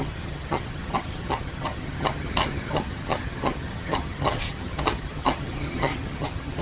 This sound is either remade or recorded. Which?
remade